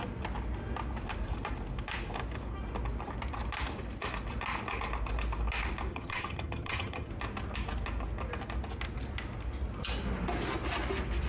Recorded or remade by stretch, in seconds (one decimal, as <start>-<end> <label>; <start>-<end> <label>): 0.0-5.9 recorded; 5.9-7.1 remade; 7.1-11.3 recorded